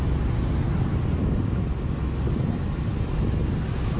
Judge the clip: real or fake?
real